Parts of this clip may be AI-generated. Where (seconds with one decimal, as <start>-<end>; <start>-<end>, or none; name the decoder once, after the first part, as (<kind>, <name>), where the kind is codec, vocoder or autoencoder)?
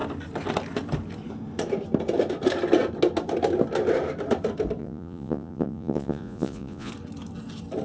4.8-6.9 (vocoder, Vocos)